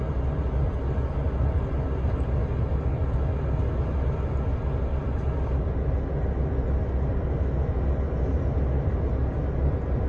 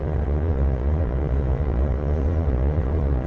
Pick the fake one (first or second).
second